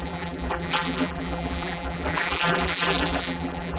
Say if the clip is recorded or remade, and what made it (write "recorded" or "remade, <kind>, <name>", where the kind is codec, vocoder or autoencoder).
remade, vocoder, BigVGAN v2